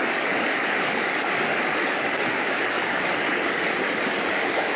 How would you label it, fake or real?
fake